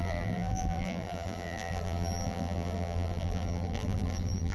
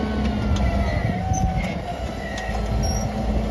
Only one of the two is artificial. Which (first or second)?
first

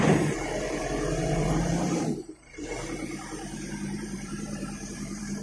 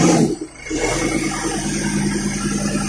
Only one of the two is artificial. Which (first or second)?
first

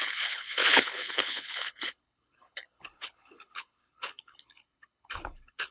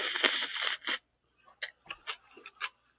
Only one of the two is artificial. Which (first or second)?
first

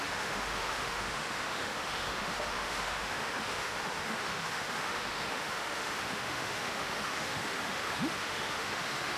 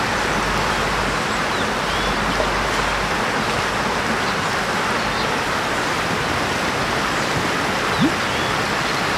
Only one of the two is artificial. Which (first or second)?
first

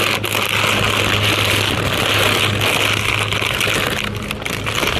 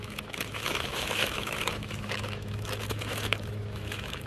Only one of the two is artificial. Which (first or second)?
second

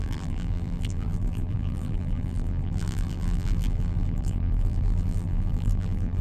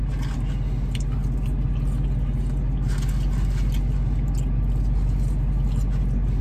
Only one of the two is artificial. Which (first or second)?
first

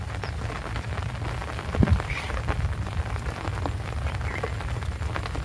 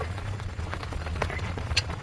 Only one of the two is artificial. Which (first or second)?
second